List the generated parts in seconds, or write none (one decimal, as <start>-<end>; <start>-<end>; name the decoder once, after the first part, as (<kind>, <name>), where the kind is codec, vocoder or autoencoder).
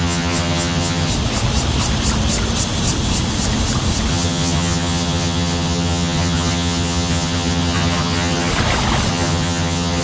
0.0-1.1 (vocoder, HiFi-GAN); 4.1-8.5; 9.1-10.0